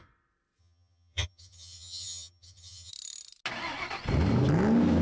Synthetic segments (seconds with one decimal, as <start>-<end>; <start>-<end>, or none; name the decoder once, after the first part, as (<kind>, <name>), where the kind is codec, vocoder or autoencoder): 0.6-2.9 (vocoder, HiFi-GAN)